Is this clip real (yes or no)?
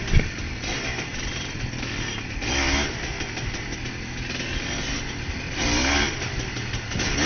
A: yes